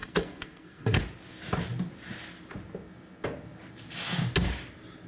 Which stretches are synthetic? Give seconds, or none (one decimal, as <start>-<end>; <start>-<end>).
0.0-1.0